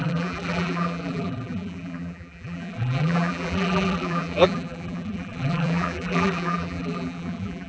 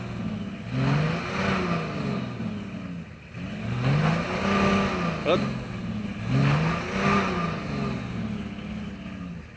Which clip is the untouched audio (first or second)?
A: second